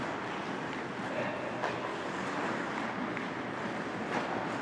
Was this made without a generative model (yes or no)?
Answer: yes